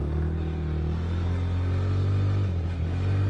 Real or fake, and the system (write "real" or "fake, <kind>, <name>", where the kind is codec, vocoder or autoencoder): real